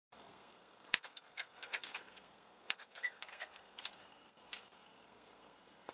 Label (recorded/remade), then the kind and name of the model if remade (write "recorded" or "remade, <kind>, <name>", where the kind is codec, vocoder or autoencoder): remade, codec, SNAC